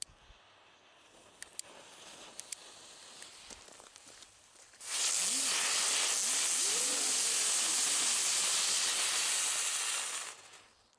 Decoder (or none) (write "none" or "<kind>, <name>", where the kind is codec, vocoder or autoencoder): none